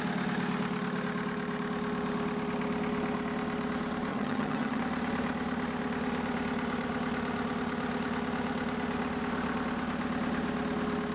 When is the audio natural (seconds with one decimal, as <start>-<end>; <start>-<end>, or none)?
0.0-4.1; 4.8-11.1